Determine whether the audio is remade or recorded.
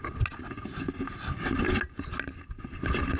recorded